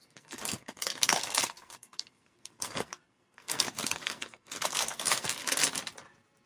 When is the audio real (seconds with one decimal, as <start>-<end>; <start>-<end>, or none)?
5.6-6.5